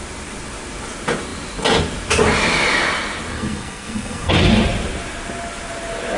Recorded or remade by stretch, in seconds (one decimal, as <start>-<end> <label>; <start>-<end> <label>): 0.0-3.3 recorded; 3.3-4.4 remade; 4.4-6.2 recorded